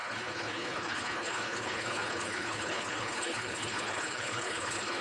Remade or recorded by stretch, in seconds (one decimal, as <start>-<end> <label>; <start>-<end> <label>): 0.0-5.0 remade